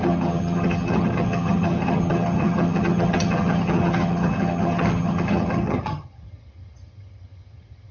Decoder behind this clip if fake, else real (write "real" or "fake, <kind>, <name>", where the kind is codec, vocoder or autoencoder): fake, vocoder, HiFi-GAN